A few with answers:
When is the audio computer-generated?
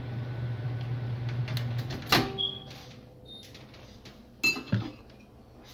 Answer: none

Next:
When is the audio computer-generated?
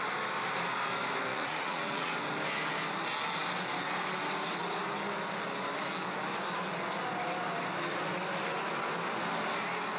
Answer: 1.3-2.1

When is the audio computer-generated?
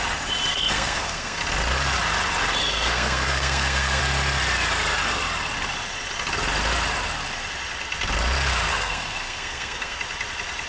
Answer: 0.5-1.4; 2.6-4.0; 8.7-10.0